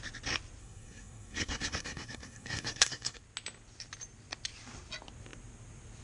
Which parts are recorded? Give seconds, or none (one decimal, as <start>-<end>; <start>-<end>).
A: 0.0-0.6; 3.2-6.0